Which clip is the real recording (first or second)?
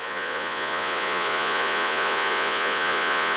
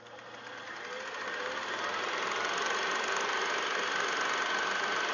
second